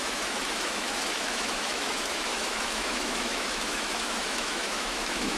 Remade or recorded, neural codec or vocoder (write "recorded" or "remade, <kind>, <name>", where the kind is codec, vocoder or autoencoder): remade, autoencoder, DAC-VAE